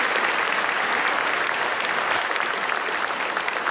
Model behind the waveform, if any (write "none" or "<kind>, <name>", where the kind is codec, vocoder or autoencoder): none